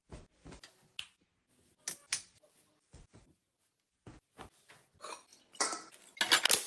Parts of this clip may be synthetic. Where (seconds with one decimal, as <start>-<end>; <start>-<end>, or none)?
none

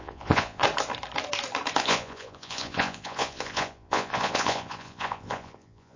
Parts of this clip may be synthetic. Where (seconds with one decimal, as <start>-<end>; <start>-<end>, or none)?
0.0-0.6; 1.8-6.0